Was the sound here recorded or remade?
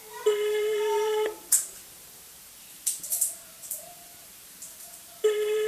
remade